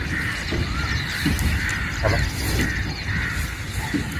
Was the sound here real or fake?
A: real